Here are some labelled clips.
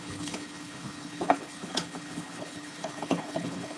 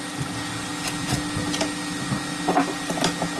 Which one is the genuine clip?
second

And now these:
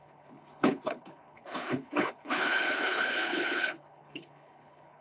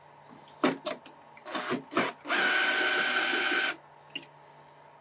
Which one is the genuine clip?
second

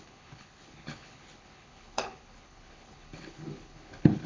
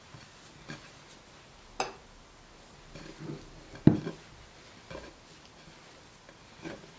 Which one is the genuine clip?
second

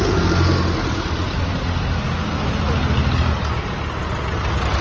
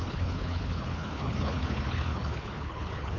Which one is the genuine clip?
first